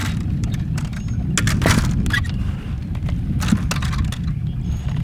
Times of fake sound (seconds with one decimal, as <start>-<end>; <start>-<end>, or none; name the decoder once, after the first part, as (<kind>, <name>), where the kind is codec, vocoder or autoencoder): 0.0-1.0 (vocoder, BigVGAN v2)